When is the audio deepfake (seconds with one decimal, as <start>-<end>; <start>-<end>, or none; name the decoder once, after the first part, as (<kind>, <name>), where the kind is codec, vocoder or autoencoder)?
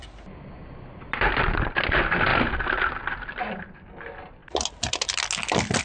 none